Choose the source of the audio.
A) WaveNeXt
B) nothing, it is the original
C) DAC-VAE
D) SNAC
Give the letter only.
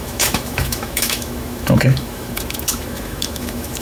C